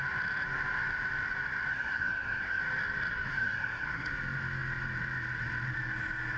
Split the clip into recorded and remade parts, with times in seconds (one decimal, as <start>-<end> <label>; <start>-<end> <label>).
0.0-1.7 recorded; 1.7-2.6 remade; 2.6-3.3 recorded; 3.3-4.1 remade; 4.1-6.4 recorded